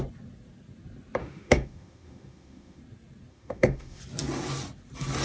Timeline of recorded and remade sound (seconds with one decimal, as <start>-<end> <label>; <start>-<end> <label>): 0.0-1.2 recorded; 1.2-2.8 remade; 2.8-3.3 recorded; 3.3-4.0 remade; 4.0-5.2 recorded